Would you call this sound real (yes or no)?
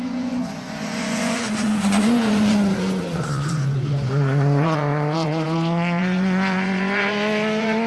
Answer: no